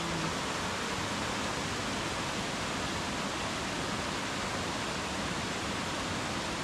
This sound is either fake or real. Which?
real